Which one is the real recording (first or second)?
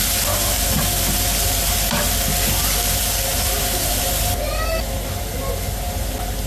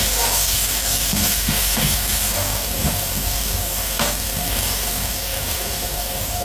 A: first